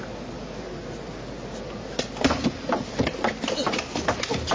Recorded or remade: recorded